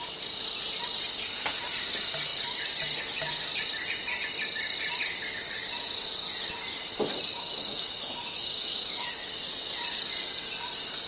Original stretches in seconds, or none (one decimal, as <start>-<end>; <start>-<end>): 0.0-7.3; 9.1-11.1